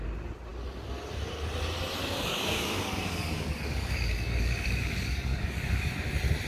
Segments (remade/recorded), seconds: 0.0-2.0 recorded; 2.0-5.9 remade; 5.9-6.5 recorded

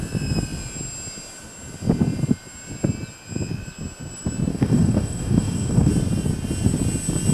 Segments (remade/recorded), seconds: 0.0-4.5 recorded; 4.5-5.9 remade; 5.9-7.3 recorded

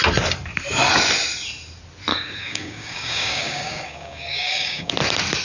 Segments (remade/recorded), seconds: 0.0-2.1 recorded; 2.1-4.9 remade; 4.9-5.4 recorded

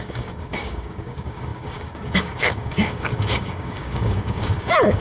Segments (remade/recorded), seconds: 0.0-5.0 remade

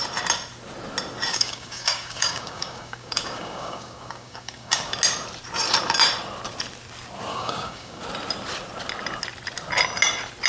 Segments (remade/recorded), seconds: 0.0-1.3 recorded; 1.3-4.9 remade; 4.9-7.3 recorded; 7.3-8.0 remade; 8.0-10.5 recorded

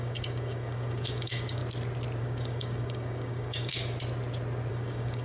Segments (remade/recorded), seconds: 0.0-1.6 remade; 1.6-2.2 recorded; 2.2-3.7 remade; 3.7-4.7 recorded; 4.7-5.2 remade

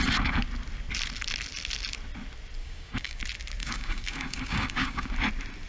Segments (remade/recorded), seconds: 0.0-2.6 recorded; 2.6-3.2 remade; 3.2-3.6 recorded; 3.6-5.1 remade; 5.1-5.7 recorded

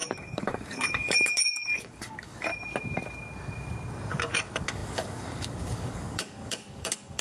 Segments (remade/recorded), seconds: 0.0-2.5 remade; 2.5-4.1 recorded; 4.1-7.2 remade